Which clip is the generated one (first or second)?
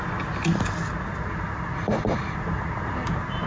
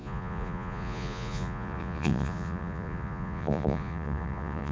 second